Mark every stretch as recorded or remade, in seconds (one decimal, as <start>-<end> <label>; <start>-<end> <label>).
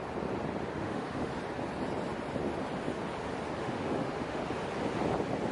0.0-0.8 recorded; 0.8-1.3 remade; 1.3-3.6 recorded; 3.6-4.4 remade; 4.4-5.5 recorded